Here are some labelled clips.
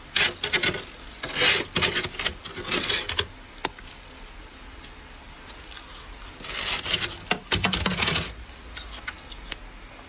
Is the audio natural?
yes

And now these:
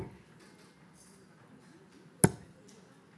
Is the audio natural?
yes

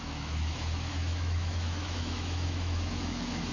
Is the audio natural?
no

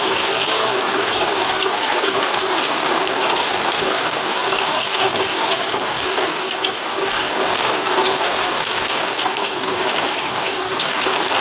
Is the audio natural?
no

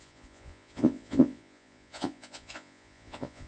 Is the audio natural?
no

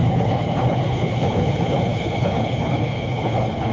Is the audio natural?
no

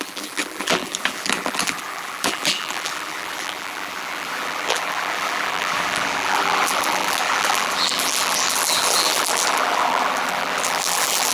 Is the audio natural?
no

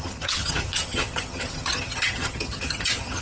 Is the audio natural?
no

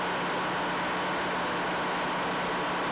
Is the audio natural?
yes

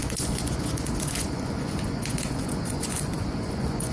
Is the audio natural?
no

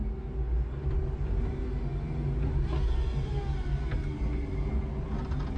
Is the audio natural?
yes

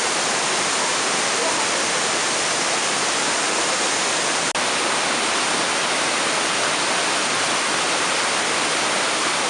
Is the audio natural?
yes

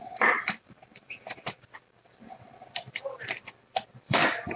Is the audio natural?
no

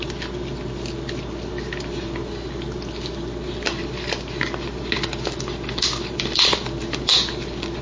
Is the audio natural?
yes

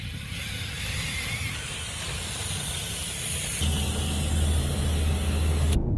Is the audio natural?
yes